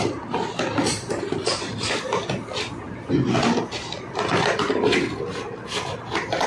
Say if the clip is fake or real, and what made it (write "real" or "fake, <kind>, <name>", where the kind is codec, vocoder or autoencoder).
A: real